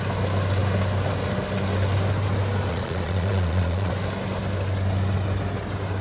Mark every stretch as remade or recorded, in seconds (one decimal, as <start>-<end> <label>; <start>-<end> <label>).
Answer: 0.0-2.7 recorded; 2.7-3.9 remade; 3.9-6.0 recorded